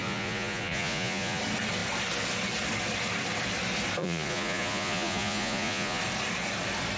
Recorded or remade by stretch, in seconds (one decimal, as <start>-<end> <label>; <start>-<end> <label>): 0.0-1.4 remade; 1.4-4.0 recorded; 4.0-6.0 remade; 6.0-7.0 recorded